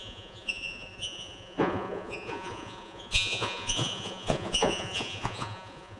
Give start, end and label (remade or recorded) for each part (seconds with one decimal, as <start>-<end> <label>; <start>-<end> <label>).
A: 0.0-6.0 remade